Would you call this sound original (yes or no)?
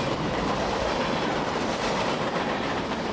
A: no